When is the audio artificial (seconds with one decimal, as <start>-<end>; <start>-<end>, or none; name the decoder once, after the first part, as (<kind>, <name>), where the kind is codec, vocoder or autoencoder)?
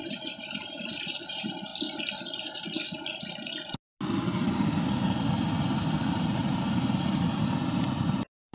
0.0-1.7 (vocoder, BigVGAN v2); 6.1-8.5